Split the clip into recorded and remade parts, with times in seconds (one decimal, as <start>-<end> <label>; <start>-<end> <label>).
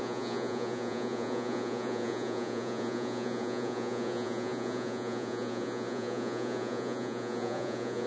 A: 0.0-8.1 remade